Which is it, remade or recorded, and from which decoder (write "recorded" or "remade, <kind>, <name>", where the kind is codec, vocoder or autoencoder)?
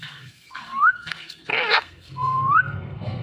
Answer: remade, codec, SNAC